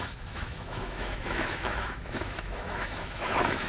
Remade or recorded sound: remade